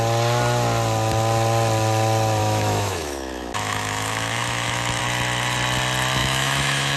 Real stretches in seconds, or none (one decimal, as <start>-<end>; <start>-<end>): 0.0-2.4; 5.0-6.2